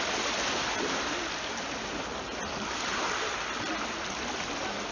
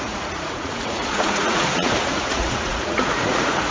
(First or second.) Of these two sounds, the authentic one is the first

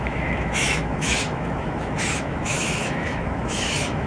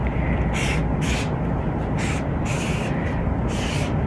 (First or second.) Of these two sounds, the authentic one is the second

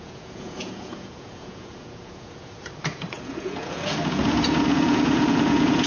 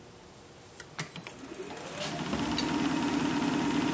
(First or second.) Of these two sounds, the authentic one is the second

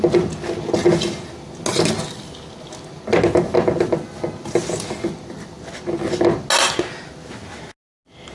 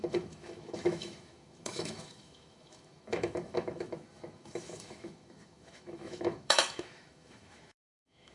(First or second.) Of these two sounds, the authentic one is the first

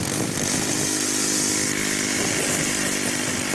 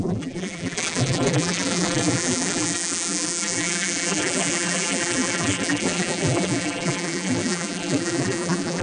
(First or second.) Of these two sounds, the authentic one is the first